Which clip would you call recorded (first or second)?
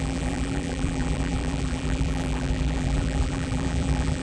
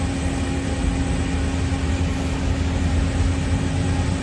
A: second